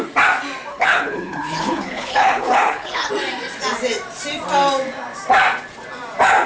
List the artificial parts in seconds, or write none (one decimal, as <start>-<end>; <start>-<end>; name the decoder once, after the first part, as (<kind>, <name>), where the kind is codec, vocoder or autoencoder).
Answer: 0.7-3.1 (codec, HILCodec)